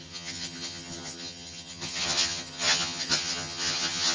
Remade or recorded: remade